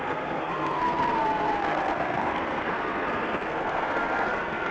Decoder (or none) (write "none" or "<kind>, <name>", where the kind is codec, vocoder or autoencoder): codec, SNAC